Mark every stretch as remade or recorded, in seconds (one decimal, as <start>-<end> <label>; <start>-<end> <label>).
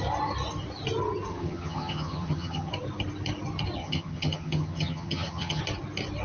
0.0-1.3 recorded; 1.3-2.7 remade; 2.7-3.8 recorded; 3.8-5.6 remade; 5.6-6.2 recorded